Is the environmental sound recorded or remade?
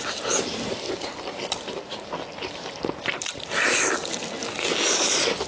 recorded